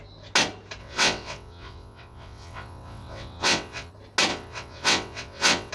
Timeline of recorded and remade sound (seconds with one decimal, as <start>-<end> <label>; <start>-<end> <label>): 0.0-0.8 recorded; 0.8-3.9 remade; 3.9-4.3 recorded; 4.3-5.7 remade